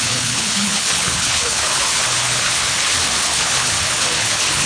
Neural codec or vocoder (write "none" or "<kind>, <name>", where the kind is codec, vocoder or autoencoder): codec, HILCodec